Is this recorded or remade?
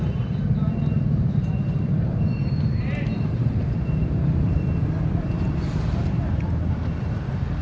remade